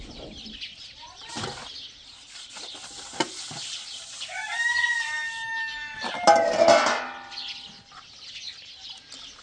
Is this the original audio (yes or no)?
yes